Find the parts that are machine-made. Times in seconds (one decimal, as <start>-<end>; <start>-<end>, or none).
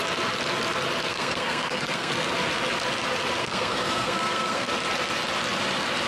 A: 1.1-2.1; 3.4-4.7